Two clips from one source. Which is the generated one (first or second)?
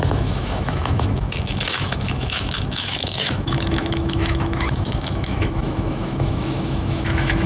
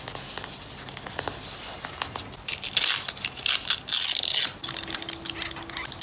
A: first